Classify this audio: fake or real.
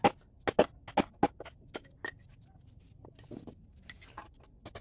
real